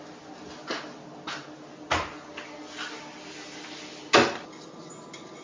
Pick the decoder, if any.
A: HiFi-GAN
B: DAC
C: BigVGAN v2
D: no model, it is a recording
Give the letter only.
D